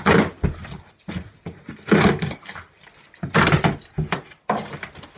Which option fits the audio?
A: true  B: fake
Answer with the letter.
A